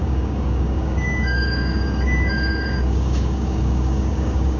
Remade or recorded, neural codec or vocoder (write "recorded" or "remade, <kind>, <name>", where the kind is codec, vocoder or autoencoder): remade, codec, DAC